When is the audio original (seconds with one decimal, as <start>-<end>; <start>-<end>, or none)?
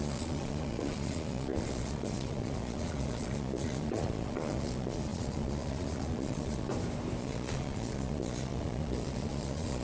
6.7-7.2